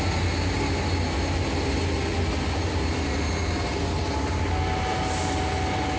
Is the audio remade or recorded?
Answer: recorded